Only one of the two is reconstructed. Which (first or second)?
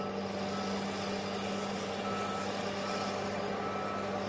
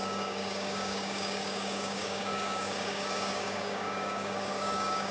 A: second